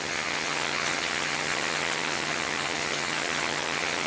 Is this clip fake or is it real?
fake